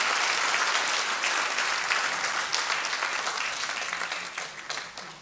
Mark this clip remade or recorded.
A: recorded